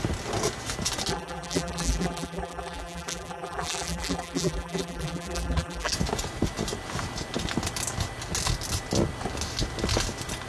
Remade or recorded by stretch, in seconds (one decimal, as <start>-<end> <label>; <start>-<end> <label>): 0.0-1.1 recorded; 1.1-5.9 remade; 5.9-10.5 recorded

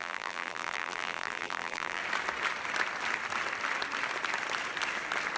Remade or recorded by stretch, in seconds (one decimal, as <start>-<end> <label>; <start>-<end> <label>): 0.0-2.0 remade; 2.0-5.4 recorded